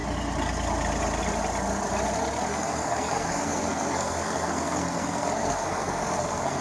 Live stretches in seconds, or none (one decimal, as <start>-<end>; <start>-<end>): 0.0-2.5